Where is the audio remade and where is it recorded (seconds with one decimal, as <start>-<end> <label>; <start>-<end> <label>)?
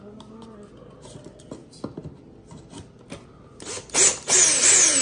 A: 0.0-5.0 recorded